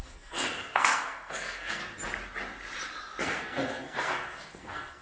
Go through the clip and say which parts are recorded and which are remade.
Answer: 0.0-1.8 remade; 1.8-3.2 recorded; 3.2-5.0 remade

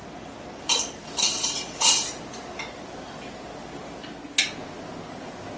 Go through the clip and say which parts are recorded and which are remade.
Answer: 0.0-5.6 recorded

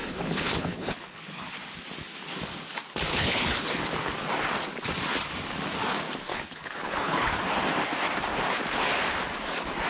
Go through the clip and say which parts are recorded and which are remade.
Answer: 0.0-1.5 remade; 1.5-3.1 recorded; 3.1-3.8 remade; 3.8-6.3 recorded; 6.3-7.4 remade; 7.4-9.9 recorded

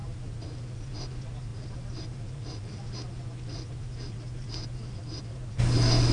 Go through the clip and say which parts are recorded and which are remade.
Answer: 0.0-0.8 remade; 0.8-1.5 recorded; 1.5-5.2 remade; 5.2-6.1 recorded

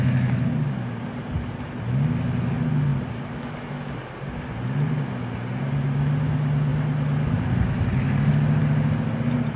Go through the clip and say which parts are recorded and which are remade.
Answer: 0.0-9.6 recorded

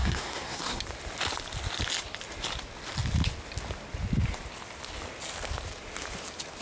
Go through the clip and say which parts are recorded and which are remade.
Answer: 0.0-0.8 remade; 0.8-6.6 recorded

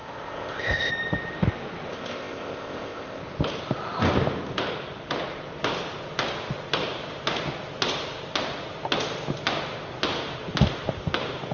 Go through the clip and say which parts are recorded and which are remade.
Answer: 0.0-0.9 remade; 0.9-1.9 recorded; 1.9-3.2 remade; 3.2-11.5 recorded

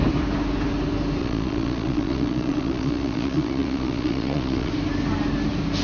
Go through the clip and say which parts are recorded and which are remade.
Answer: 0.0-1.2 recorded; 1.2-4.7 remade; 4.7-5.8 recorded